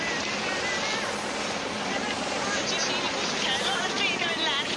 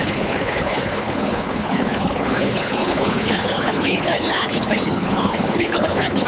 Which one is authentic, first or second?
first